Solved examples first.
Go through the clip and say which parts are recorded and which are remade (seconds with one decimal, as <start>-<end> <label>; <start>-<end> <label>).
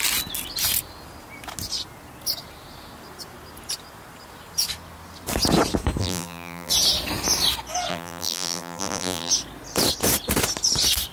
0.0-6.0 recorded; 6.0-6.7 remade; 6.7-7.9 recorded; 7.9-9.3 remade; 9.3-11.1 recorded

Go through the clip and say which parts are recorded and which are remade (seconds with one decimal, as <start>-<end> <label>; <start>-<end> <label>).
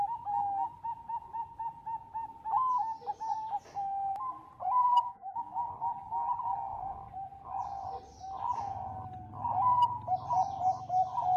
0.0-4.9 recorded; 4.9-5.7 remade; 5.7-11.4 recorded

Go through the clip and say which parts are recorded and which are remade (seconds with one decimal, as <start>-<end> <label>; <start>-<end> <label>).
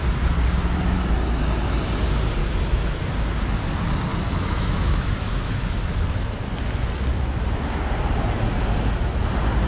0.0-2.4 recorded; 2.4-3.0 remade; 3.0-4.1 recorded; 4.1-5.6 remade; 5.6-9.7 recorded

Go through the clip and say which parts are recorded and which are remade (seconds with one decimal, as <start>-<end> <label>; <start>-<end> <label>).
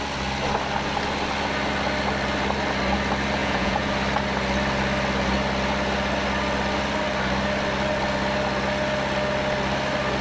0.0-3.4 recorded; 3.4-3.9 remade; 3.9-10.2 recorded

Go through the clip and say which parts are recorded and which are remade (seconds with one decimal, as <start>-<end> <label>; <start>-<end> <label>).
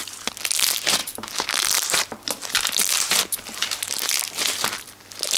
0.0-1.0 recorded; 1.0-4.2 remade; 4.2-5.4 recorded